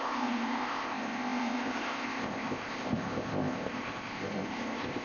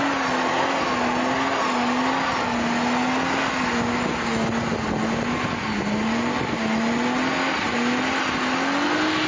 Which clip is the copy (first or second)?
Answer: first